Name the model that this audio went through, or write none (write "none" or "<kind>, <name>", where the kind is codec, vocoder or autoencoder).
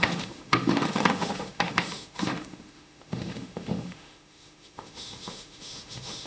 autoencoder, DAC-VAE